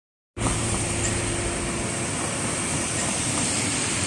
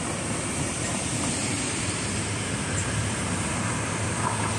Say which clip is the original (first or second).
first